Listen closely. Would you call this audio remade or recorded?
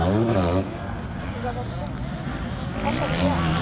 recorded